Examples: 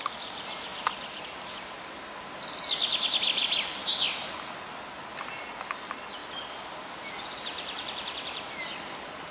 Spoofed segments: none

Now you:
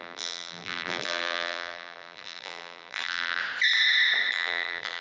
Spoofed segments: 0.0-3.4 (vocoder, BigVGAN v2); 4.3-5.0

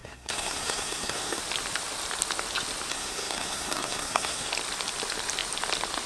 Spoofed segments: 0.0-1.4 (codec, SNAC); 2.9-4.5